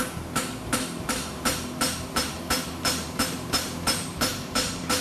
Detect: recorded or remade remade